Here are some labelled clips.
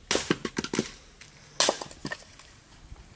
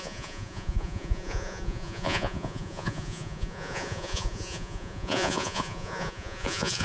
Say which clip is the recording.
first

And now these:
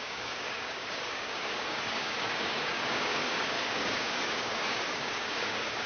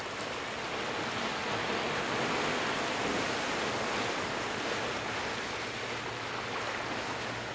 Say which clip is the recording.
second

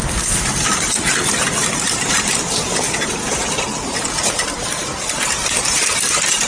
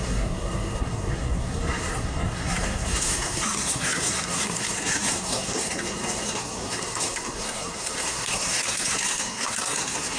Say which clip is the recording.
first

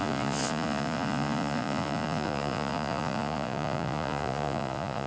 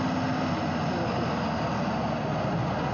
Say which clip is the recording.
second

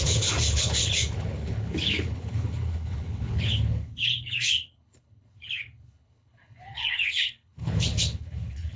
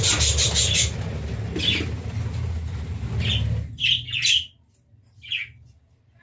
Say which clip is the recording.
second